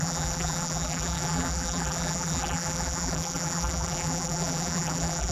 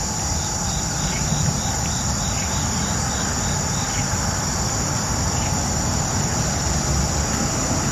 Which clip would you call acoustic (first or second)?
second